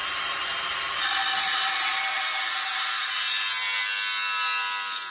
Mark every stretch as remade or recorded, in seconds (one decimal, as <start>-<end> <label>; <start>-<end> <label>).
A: 0.0-5.1 recorded